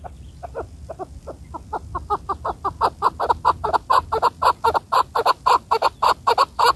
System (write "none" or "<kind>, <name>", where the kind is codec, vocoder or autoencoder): none